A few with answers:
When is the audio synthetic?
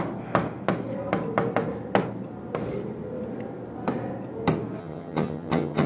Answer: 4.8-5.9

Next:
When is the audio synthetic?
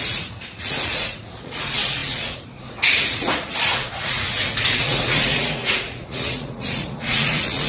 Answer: 0.0-7.7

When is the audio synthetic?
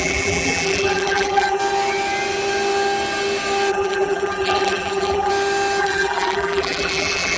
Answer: 0.0-1.6; 3.7-5.3; 5.8-7.4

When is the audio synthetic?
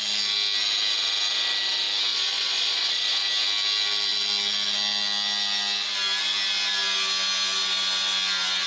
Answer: 2.1-3.1